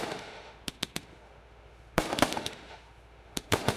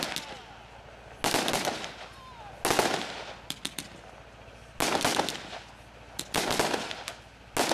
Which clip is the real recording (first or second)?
second